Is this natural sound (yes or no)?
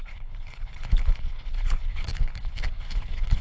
no